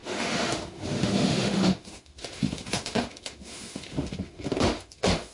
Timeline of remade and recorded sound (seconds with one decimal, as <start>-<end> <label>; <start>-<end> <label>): 0.0-5.3 remade